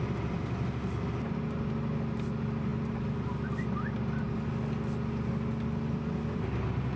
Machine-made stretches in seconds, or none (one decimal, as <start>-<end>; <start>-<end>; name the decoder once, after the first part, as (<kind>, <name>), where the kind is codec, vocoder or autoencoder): none